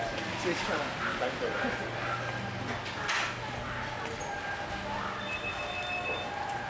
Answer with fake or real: real